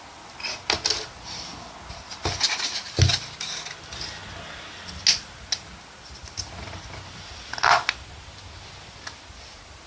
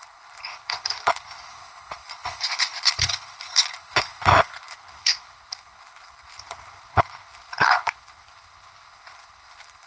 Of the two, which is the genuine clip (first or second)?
first